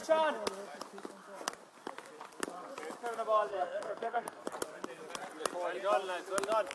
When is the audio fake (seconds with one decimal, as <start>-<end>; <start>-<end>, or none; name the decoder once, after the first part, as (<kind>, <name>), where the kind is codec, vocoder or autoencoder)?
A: 3.5-4.4 (codec, SNAC)